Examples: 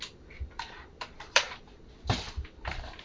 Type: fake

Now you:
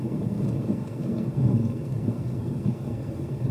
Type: fake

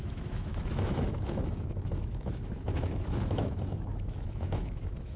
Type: fake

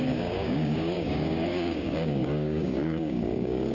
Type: fake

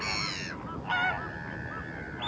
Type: real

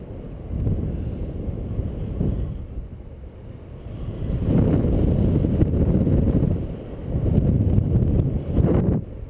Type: real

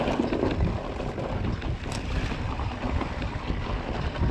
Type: real